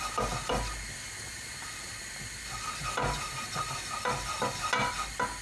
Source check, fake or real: real